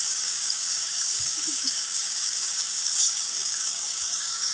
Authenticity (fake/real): fake